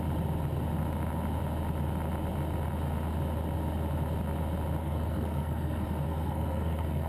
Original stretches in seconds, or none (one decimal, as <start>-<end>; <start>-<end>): 0.0-4.8